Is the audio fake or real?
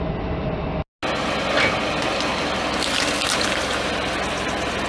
real